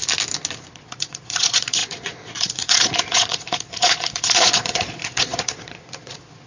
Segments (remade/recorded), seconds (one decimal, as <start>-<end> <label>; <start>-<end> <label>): 0.0-0.7 recorded; 0.7-6.5 remade